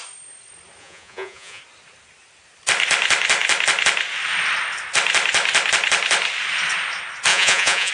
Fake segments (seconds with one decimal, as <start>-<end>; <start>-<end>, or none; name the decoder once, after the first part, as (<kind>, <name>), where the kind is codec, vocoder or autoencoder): 0.8-1.6 (vocoder, Vocos); 7.3-7.9

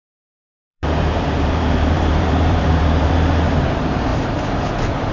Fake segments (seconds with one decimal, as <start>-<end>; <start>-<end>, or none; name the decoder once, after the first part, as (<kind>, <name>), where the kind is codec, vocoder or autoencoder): 0.0-3.1 (vocoder, BigVGAN v2); 4.1-5.1